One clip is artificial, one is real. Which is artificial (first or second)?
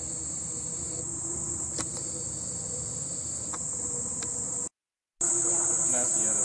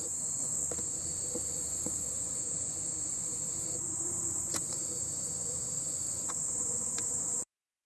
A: second